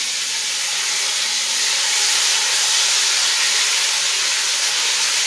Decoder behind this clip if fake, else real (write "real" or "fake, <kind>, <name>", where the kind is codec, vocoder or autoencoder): real